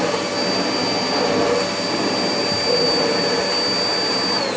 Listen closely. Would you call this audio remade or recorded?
recorded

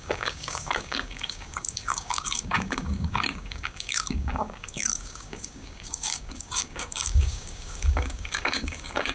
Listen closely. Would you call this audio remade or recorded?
remade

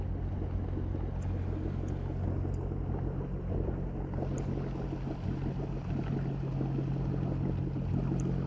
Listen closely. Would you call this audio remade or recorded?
recorded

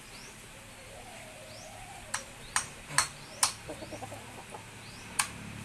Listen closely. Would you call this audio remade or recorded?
recorded